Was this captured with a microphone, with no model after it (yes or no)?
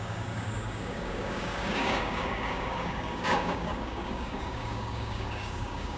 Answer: no